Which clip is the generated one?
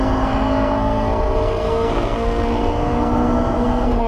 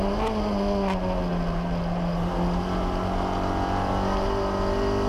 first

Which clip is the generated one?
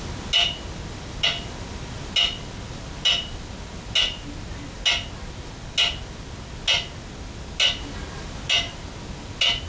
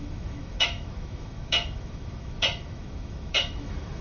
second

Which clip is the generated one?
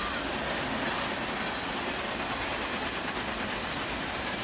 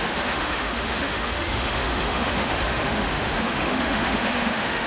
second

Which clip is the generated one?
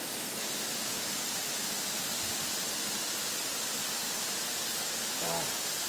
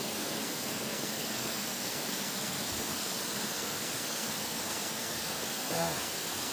second